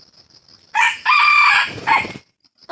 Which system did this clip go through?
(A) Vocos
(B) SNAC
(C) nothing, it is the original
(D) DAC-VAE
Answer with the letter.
C